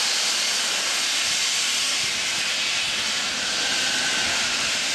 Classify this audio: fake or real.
real